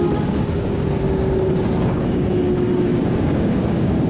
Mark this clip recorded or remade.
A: remade